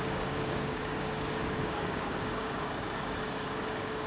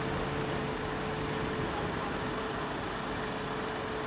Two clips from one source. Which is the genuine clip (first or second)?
second